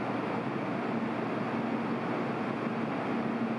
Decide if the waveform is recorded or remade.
recorded